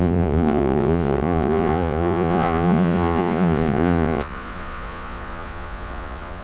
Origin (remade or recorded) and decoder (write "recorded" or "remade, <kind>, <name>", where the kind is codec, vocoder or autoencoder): remade, vocoder, Vocos